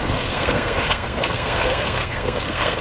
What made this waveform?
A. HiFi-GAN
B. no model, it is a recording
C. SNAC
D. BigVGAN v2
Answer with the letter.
C